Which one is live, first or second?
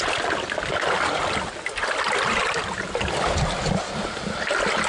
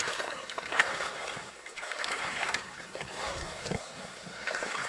first